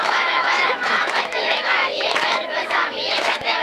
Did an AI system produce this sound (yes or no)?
yes